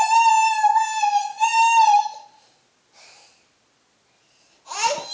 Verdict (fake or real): real